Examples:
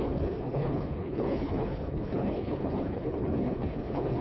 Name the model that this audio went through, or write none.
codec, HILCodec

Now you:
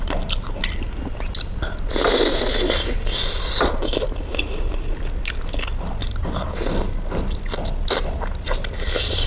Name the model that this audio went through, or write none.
none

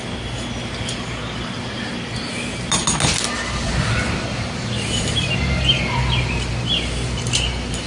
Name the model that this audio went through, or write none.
none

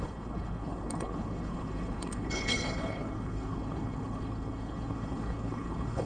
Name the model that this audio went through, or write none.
codec, HILCodec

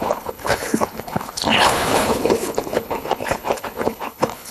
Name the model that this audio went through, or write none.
codec, HILCodec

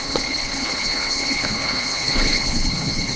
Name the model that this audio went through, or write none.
codec, HILCodec